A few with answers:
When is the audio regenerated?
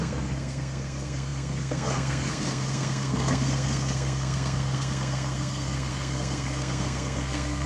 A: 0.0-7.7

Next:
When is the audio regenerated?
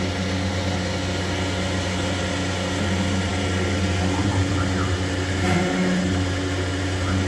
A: none